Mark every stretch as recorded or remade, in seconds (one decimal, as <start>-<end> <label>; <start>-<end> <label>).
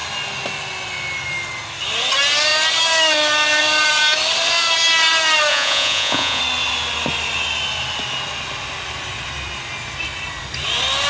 0.0-5.5 recorded; 5.5-6.4 remade; 6.4-11.1 recorded